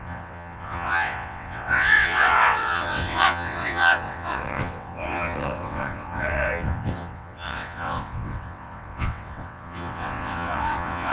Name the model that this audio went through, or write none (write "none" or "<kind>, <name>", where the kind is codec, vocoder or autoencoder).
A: vocoder, WaveNeXt